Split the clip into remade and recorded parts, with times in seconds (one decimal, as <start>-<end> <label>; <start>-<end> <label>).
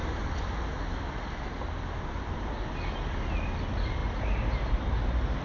0.0-5.4 recorded